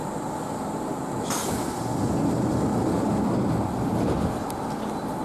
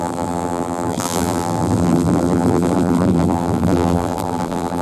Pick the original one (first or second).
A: first